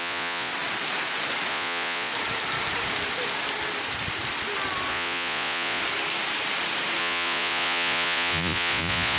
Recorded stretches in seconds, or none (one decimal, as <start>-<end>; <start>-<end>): 0.5-1.5; 2.1-4.9; 5.8-7.0